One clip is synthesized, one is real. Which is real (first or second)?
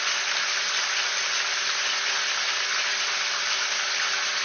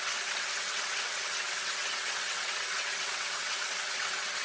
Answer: first